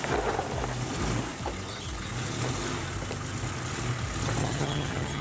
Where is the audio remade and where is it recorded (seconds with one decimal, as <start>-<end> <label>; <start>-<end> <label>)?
0.0-4.4 recorded; 4.4-5.2 remade